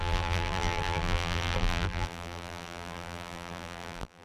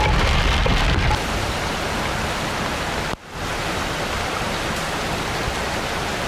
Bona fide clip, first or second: second